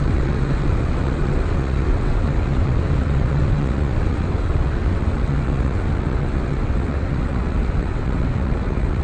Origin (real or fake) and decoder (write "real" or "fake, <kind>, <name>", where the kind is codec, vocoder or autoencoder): fake, vocoder, WaveNeXt